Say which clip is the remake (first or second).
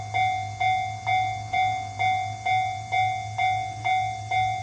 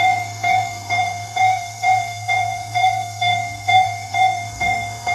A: second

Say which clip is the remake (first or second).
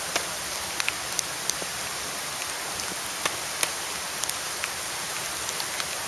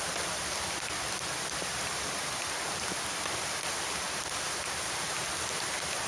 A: second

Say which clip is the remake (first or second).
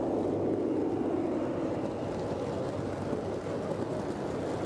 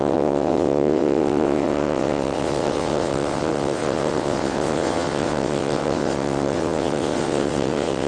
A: second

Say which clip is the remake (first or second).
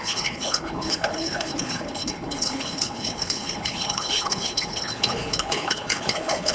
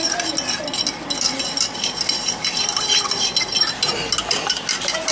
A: first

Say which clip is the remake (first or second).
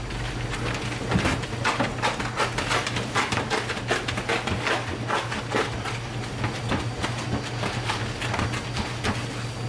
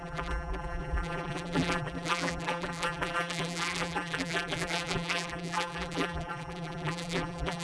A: second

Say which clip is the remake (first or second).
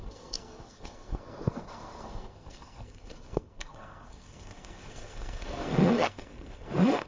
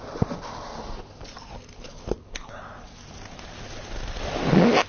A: first